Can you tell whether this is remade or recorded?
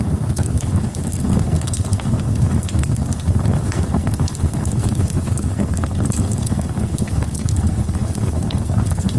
remade